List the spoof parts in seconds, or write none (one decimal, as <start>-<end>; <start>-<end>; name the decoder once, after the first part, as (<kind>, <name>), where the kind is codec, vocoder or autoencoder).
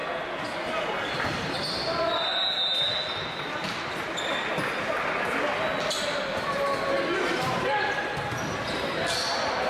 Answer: none